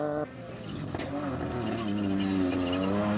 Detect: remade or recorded recorded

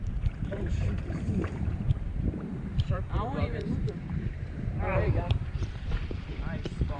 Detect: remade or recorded remade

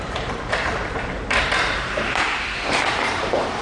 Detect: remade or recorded remade